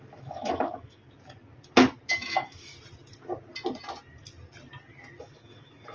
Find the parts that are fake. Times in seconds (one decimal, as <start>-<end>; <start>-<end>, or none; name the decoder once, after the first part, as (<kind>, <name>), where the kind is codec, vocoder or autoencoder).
0.0-1.0 (autoencoder, DAC-VAE); 2.1-2.7; 5.2-5.9